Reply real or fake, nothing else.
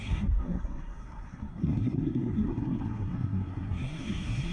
fake